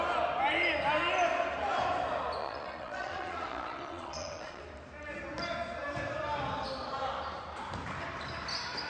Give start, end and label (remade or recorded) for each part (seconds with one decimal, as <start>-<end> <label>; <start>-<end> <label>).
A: 0.0-2.4 recorded; 2.4-4.6 remade; 4.6-8.9 recorded